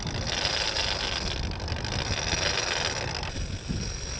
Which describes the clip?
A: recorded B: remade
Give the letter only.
A